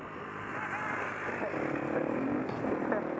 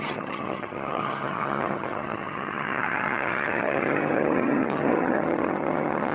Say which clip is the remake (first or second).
second